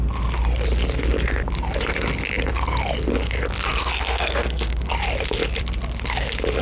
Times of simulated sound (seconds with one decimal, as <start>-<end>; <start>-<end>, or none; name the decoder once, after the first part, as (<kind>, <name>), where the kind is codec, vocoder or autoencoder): 3.8-4.9 (codec, SNAC)